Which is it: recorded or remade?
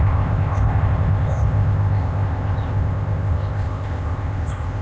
remade